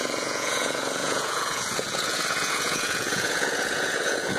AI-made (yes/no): yes